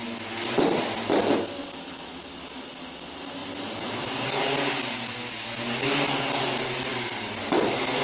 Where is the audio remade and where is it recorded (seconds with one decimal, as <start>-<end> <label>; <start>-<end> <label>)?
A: 0.0-3.4 recorded; 3.4-5.3 remade; 5.3-6.9 recorded; 6.9-7.4 remade; 7.4-8.0 recorded